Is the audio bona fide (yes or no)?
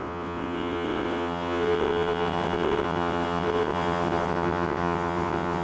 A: no